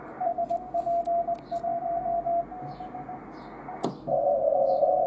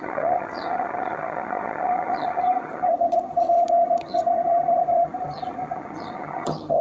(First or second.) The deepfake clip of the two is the second